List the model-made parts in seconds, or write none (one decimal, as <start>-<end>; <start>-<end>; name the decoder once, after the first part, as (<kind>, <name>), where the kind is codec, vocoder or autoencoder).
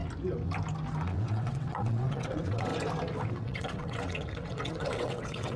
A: 1.0-2.7 (vocoder, WaveNeXt); 3.3-5.6